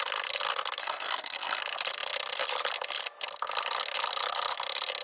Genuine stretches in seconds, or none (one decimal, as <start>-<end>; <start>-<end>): 0.0-0.8; 1.6-5.0